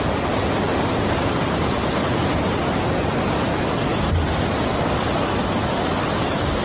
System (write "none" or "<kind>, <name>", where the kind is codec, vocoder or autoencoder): none